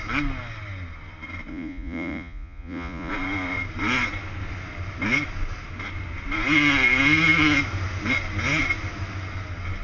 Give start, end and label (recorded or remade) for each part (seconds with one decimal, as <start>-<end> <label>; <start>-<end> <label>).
0.0-1.5 recorded; 1.5-3.1 remade; 3.1-9.8 recorded